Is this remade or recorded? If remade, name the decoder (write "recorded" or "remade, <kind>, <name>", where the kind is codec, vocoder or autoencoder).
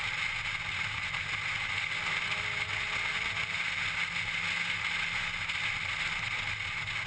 recorded